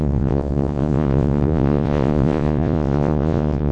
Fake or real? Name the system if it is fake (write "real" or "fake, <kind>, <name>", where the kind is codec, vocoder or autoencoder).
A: fake, vocoder, Vocos